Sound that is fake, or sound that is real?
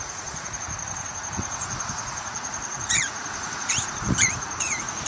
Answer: fake